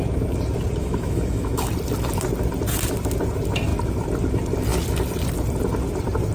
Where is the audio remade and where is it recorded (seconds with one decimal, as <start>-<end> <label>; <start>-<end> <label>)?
0.0-0.8 recorded; 0.8-1.7 remade; 1.7-6.3 recorded